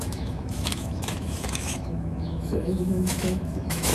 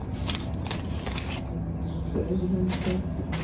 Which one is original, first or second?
second